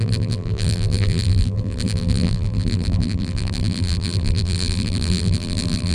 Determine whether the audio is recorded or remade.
remade